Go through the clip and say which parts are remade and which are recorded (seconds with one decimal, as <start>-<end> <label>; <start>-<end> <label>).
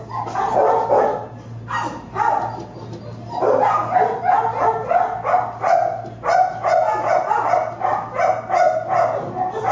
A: 0.0-9.7 recorded